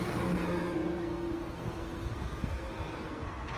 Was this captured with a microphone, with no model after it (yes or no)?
no